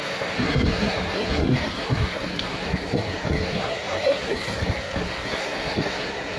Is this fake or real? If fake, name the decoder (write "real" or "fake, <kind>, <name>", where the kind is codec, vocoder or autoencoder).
fake, codec, SNAC